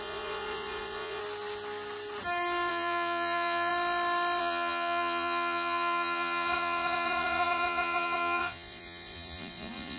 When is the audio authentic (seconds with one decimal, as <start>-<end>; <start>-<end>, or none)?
1.2-2.7; 3.7-4.4